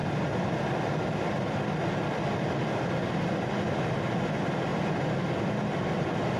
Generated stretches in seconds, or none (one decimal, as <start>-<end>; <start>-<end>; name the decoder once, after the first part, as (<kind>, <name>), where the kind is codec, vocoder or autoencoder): 4.7-5.4 (vocoder, BigVGAN v2)